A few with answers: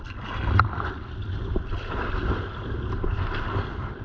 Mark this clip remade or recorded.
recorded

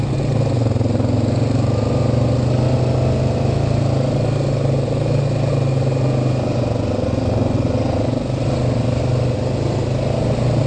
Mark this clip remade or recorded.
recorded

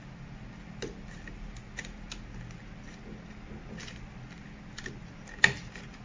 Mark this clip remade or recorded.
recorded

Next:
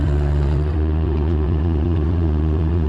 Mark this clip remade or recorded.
remade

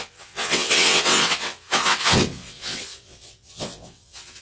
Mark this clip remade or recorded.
remade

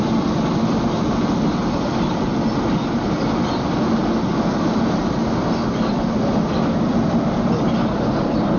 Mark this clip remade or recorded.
recorded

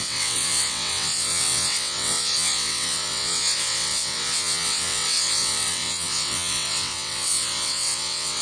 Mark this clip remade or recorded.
remade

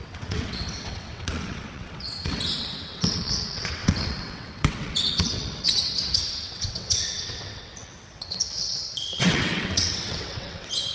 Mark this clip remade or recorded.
remade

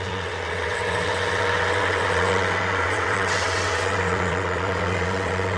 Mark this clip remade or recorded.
remade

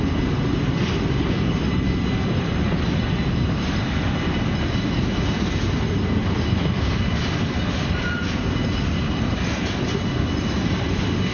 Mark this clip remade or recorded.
recorded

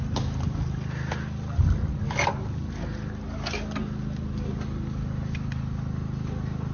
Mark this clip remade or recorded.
recorded